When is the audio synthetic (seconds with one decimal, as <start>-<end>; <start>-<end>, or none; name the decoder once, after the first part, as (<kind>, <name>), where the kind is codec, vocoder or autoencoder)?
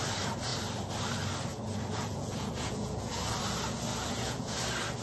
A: 1.5-3.1 (vocoder, Vocos); 3.9-4.6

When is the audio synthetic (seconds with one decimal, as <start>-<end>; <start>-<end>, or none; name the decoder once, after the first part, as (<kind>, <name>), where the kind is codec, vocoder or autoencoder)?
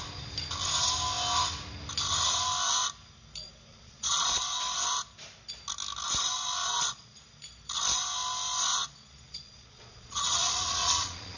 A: 3.7-4.6 (vocoder, Vocos); 6.6-7.2; 8.7-11.4